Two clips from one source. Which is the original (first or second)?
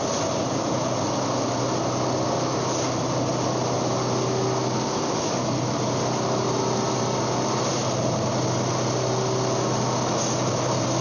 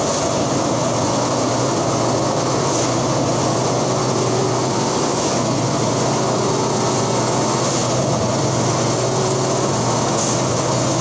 first